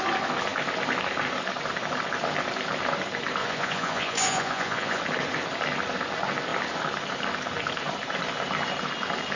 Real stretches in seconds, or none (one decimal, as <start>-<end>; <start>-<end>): 0.0-3.4; 5.0-9.4